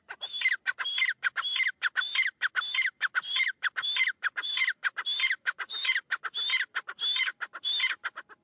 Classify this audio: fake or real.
fake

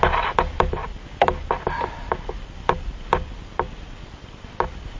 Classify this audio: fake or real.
real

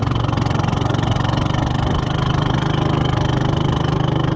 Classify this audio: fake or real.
real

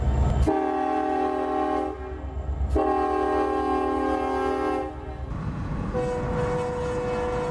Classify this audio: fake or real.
real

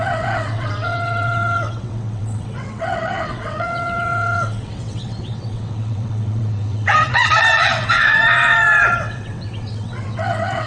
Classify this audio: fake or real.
fake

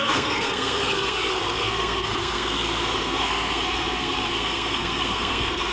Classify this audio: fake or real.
fake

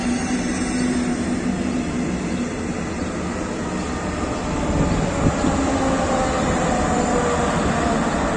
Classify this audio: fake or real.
real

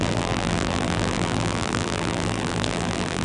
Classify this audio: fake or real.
fake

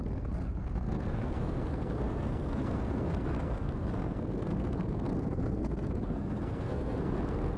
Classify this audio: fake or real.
fake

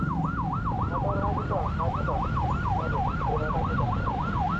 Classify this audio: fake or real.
real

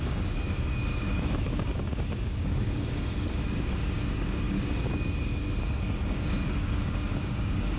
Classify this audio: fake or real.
fake